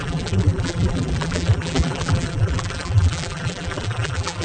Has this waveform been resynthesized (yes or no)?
yes